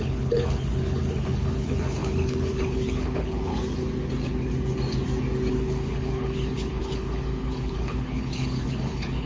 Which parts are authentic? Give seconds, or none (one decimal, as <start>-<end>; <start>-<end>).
3.5-5.5